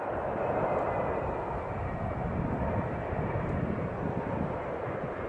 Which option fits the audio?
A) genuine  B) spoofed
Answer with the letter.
A